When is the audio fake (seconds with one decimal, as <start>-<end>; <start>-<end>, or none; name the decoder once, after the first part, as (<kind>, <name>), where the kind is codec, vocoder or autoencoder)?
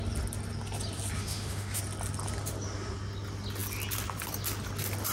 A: 1.2-1.8 (autoencoder, DAC-VAE)